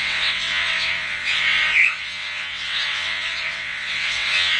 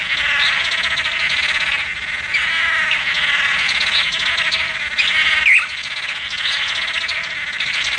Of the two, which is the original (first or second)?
second